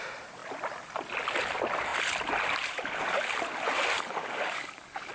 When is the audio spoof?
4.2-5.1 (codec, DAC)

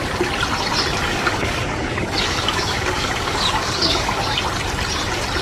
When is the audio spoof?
1.0-4.2 (codec, DAC)

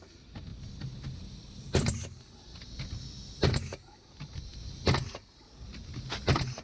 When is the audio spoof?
none

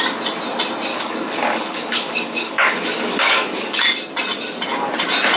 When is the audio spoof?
0.9-3.8 (codec, DAC)